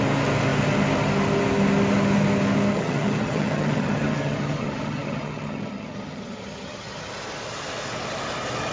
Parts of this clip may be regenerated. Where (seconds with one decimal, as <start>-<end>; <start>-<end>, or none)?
2.7-7.1